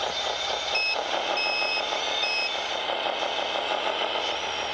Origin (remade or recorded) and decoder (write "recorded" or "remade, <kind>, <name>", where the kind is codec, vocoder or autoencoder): recorded